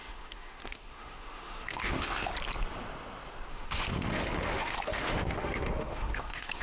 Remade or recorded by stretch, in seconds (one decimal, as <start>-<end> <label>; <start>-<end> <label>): 0.0-2.3 remade; 2.3-3.5 recorded; 3.5-6.6 remade